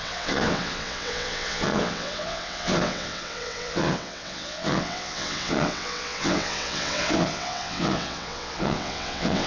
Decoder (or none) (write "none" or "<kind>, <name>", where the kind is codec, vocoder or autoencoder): vocoder, WaveNeXt